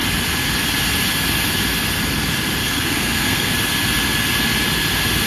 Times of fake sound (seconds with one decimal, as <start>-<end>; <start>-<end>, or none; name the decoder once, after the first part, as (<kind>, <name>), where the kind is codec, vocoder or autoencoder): 2.6-3.5 (codec, SNAC)